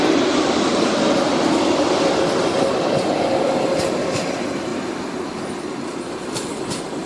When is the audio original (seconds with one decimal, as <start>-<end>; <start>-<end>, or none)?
4.7-7.1